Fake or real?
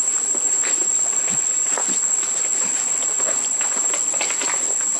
real